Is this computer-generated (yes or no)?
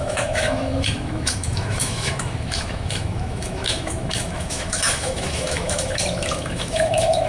yes